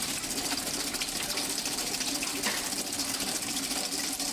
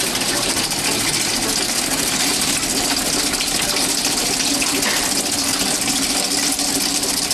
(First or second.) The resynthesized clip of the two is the first